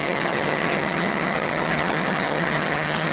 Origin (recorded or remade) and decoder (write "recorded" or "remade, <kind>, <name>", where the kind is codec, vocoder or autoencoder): remade, vocoder, HiFi-GAN